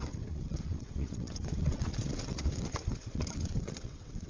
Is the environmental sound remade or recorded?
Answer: remade